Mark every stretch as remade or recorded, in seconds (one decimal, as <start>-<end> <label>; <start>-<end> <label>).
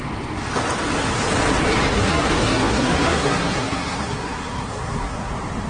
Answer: 0.0-1.9 recorded; 1.9-5.3 remade; 5.3-5.7 recorded